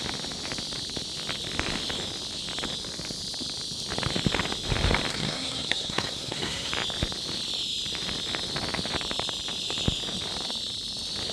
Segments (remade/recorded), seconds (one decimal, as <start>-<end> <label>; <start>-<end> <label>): 0.0-5.1 recorded; 5.1-6.7 remade; 6.7-11.3 recorded